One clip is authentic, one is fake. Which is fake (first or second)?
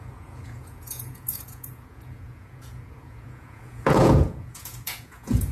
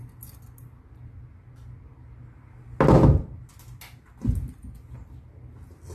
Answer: first